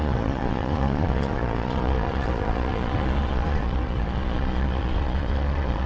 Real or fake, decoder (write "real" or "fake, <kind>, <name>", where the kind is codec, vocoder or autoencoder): fake, vocoder, Vocos